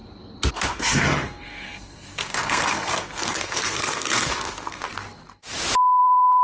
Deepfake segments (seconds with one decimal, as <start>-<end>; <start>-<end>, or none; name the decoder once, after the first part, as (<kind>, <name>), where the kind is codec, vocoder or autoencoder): 0.5-4.9 (codec, SNAC); 6.0-6.4